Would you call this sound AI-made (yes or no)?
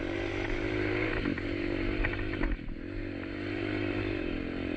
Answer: yes